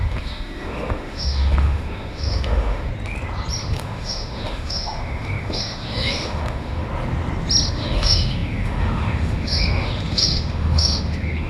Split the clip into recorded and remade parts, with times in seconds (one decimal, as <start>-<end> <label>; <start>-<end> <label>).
0.0-2.9 remade; 2.9-3.6 recorded; 3.6-6.9 remade; 6.9-7.7 recorded; 7.7-11.5 remade